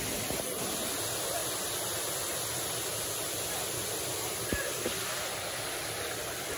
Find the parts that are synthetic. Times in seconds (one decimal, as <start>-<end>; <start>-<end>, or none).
none